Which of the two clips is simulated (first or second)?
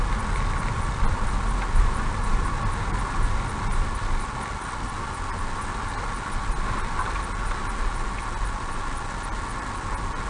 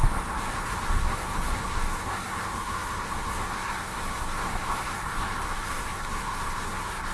second